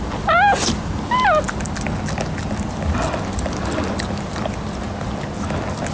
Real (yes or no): yes